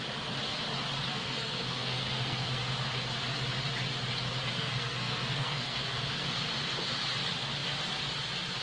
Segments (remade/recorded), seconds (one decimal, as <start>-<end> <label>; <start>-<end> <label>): 0.0-1.0 recorded; 1.0-2.6 remade; 2.6-4.4 recorded; 4.4-6.4 remade; 6.4-8.6 recorded